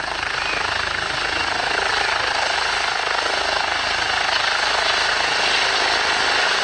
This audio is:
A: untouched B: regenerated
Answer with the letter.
A